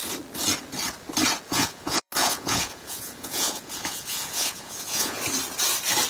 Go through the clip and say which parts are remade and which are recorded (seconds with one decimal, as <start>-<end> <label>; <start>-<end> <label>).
0.0-1.5 recorded; 1.5-5.2 remade; 5.2-6.1 recorded